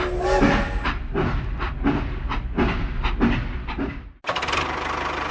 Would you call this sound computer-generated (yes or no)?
no